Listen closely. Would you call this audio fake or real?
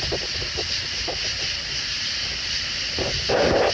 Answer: real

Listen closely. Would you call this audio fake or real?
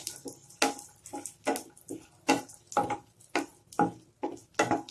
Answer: real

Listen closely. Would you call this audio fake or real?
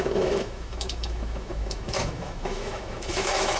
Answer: fake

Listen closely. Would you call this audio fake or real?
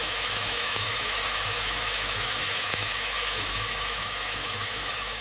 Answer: fake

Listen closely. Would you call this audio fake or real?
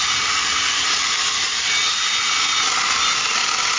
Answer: real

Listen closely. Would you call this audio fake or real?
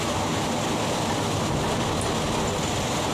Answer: real